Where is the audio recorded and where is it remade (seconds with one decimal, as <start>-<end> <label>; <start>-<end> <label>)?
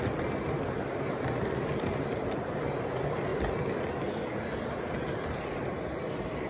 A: 0.0-3.3 remade; 3.3-5.1 recorded; 5.1-6.5 remade